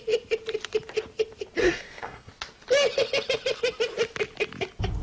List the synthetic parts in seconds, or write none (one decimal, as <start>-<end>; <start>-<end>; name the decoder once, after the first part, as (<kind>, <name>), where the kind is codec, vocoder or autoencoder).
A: 1.6-2.3 (codec, SNAC)